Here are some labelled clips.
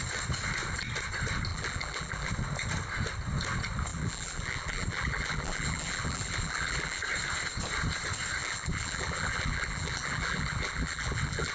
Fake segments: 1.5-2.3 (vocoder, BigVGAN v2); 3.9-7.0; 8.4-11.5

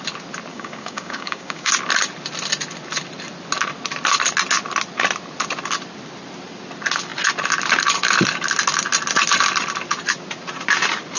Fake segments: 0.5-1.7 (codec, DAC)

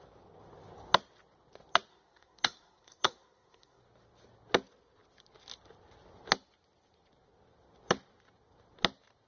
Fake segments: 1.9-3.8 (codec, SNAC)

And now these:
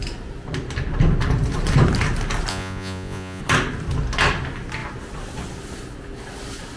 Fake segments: 2.5-3.4 (vocoder, Vocos)